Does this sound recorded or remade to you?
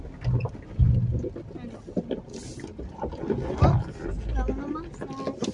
recorded